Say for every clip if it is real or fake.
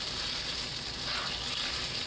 real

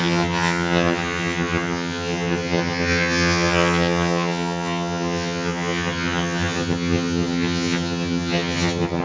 fake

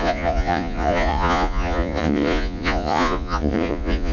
fake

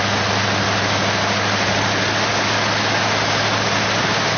real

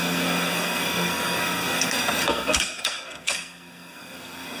fake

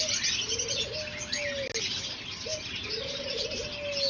real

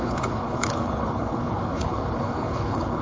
fake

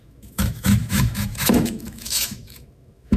fake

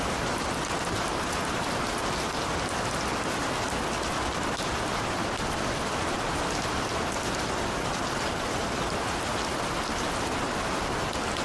real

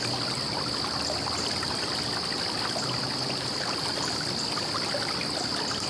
real